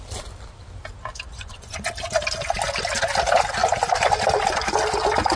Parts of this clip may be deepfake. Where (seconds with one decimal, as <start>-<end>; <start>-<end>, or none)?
1.3-1.9